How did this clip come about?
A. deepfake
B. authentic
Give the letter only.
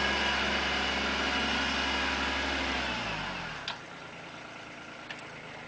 B